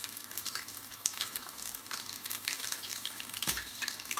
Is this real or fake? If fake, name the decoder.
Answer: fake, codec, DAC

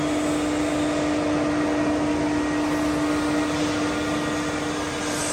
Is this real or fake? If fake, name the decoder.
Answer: real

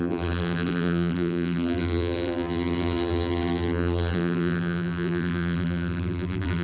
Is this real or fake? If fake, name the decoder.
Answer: fake, vocoder, BigVGAN v2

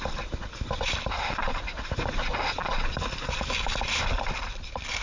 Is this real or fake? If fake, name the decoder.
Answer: real